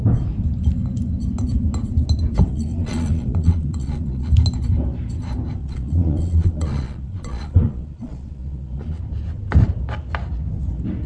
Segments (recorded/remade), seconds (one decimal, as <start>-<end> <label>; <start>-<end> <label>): 0.0-2.5 recorded; 2.5-4.3 remade; 4.3-5.6 recorded; 5.6-9.0 remade; 9.0-11.1 recorded